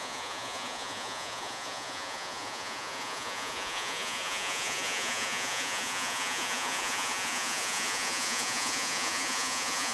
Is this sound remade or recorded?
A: remade